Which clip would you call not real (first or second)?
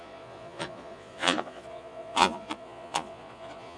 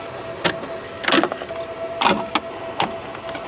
first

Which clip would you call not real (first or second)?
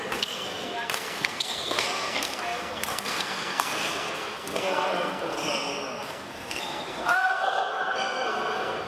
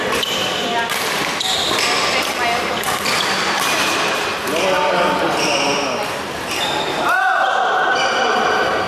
first